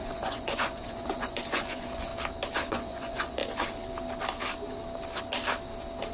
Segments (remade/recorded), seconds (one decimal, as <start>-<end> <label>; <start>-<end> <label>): 0.0-2.1 remade; 2.1-2.7 recorded; 2.7-3.4 remade; 3.4-6.1 recorded